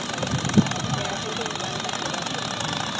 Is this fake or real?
real